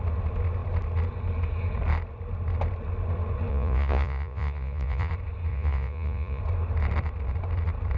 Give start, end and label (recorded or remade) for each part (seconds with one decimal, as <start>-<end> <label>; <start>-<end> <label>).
0.0-3.5 recorded; 3.5-5.1 remade; 5.1-5.5 recorded; 5.5-6.4 remade; 6.4-8.0 recorded